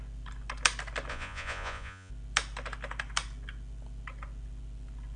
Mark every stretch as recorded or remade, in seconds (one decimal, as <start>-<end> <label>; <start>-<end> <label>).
0.0-1.1 recorded; 1.1-2.1 remade; 2.1-5.2 recorded